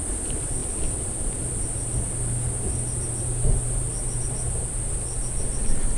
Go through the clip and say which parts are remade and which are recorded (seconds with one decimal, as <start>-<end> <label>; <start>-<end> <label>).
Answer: 0.0-6.0 recorded